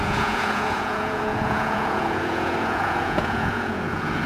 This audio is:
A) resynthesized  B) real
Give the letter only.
A